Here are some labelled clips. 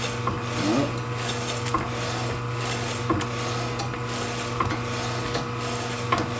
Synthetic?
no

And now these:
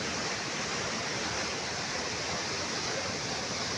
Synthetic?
yes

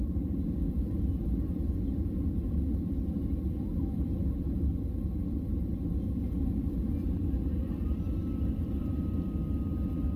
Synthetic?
no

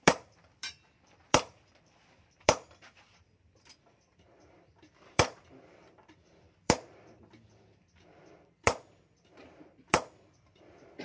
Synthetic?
yes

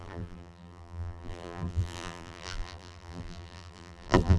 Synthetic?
yes